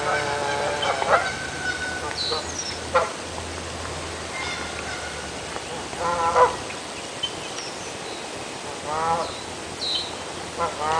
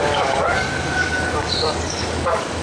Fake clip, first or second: second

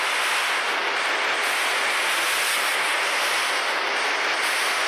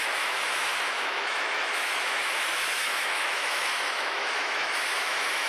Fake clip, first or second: second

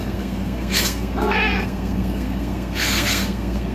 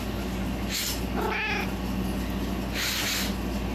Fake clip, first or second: first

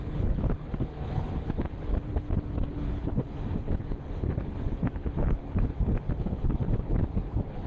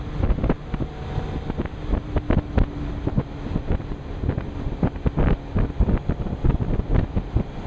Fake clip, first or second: first